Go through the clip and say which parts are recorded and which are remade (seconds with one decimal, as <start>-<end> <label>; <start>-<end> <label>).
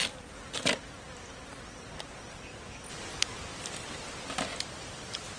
0.0-2.1 remade; 2.1-2.5 recorded; 2.5-3.1 remade; 3.1-4.5 recorded; 4.5-5.4 remade